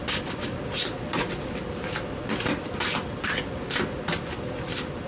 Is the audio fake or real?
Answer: real